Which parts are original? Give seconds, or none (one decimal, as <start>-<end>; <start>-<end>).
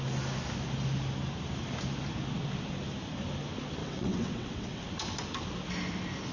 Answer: 0.0-3.8; 4.8-6.3